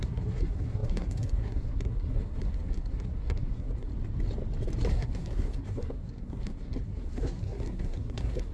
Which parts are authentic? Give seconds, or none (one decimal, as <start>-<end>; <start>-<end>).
3.9-4.9